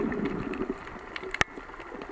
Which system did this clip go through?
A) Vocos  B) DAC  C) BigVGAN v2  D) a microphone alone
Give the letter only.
D